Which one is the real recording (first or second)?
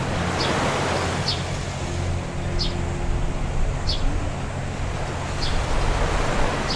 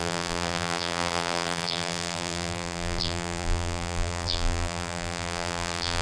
first